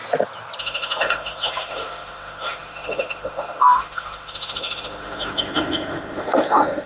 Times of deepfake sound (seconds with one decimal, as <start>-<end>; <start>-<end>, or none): 0.6-6.9